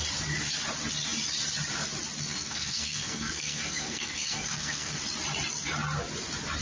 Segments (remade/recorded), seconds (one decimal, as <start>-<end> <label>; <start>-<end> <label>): 0.0-2.3 recorded; 2.3-5.0 remade; 5.0-6.6 recorded